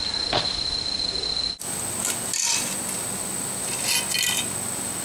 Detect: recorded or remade recorded